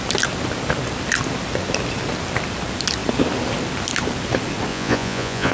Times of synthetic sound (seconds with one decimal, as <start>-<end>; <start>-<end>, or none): 4.7-5.5